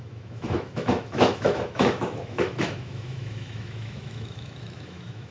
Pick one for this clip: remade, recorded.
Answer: remade